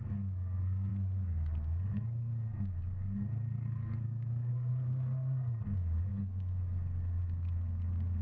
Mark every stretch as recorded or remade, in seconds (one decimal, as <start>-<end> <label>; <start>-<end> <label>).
0.0-8.2 remade